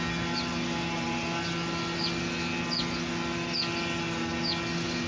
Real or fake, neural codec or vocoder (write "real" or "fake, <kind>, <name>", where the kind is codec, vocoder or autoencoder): real